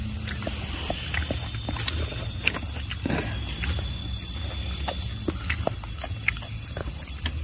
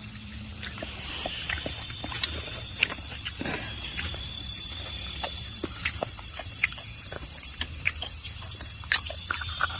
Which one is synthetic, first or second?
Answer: second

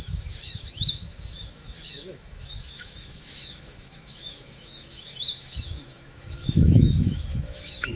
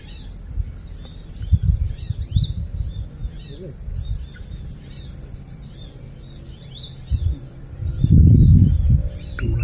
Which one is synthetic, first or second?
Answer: first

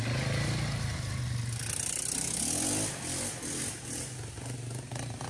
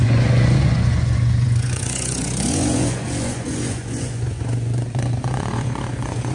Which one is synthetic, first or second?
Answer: second